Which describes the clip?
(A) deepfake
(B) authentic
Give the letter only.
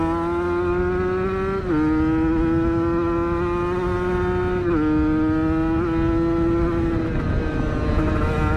B